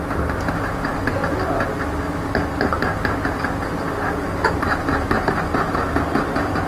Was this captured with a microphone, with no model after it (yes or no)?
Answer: yes